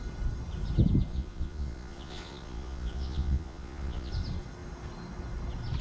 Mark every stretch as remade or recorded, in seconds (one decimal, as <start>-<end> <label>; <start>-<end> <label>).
0.0-1.1 recorded; 1.1-4.1 remade; 4.1-5.8 recorded